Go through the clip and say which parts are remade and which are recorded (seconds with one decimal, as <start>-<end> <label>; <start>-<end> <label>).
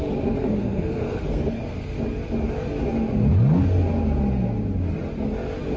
0.0-0.4 recorded; 0.4-2.0 remade; 2.0-5.8 recorded